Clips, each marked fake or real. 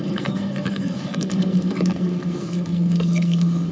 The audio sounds fake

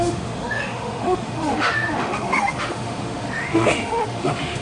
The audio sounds fake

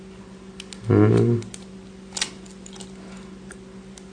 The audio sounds real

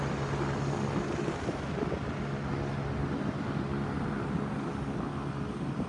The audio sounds real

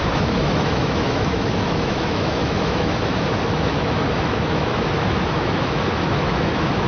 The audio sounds fake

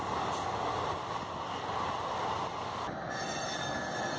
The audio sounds real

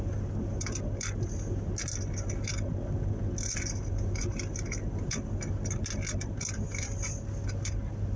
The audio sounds real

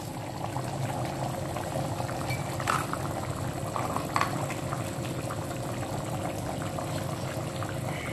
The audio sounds real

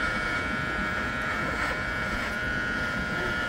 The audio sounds fake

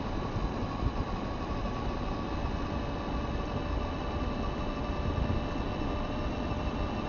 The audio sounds real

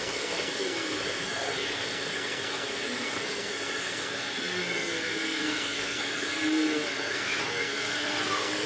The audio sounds fake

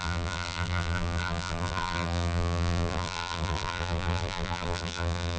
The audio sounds fake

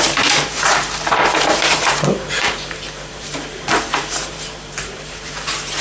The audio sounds fake